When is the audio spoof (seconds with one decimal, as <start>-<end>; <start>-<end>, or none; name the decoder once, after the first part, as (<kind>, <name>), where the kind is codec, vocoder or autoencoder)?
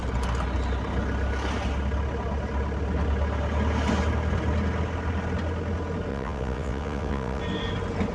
6.1-7.4 (vocoder, WaveNeXt)